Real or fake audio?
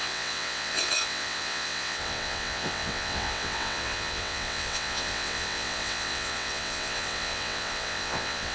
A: fake